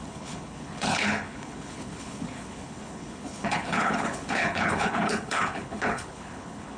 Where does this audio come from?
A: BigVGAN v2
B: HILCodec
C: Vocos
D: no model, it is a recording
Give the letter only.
B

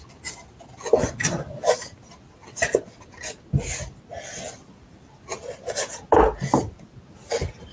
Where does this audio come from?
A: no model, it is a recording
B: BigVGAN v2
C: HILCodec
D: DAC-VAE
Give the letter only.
A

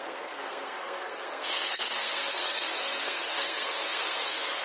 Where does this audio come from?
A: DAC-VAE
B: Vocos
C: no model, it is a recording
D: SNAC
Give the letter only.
D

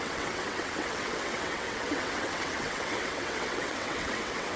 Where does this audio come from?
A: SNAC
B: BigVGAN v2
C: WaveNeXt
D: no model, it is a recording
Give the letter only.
C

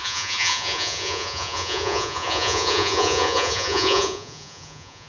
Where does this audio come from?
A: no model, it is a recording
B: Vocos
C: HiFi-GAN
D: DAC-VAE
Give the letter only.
B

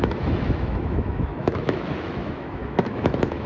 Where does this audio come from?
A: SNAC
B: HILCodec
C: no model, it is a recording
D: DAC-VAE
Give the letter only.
D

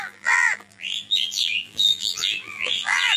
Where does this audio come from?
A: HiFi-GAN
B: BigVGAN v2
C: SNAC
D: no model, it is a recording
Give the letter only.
B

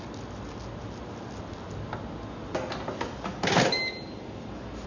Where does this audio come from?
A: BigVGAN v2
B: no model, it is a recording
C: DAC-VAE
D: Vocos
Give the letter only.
B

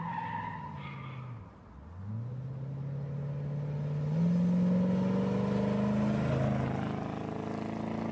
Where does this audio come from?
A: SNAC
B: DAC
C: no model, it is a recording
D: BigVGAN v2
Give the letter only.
C